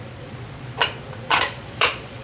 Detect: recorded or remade remade